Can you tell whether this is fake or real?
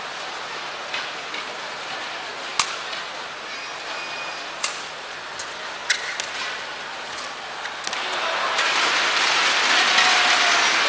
real